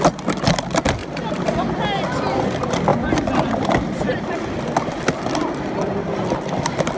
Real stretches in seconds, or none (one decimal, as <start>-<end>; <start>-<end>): 0.0-1.0; 1.8-7.0